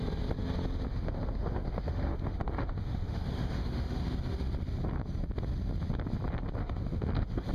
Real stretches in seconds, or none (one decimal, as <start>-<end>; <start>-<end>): 0.0-0.9; 4.0-6.6